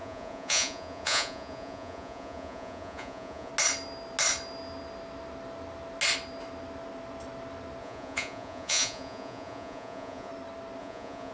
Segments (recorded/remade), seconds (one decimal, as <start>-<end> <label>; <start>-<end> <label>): 0.0-3.5 remade; 3.5-7.8 recorded; 7.8-10.3 remade; 10.3-10.8 recorded; 10.8-11.3 remade